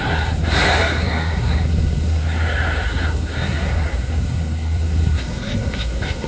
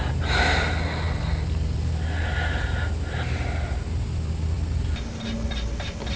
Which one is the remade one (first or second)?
first